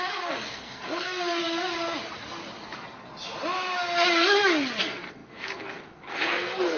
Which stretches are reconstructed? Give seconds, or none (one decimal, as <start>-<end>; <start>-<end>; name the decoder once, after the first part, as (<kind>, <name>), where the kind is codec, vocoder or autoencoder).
0.0-1.4 (codec, SNAC); 4.8-6.8